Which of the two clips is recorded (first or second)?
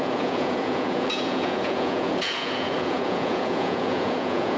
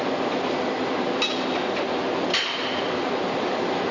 second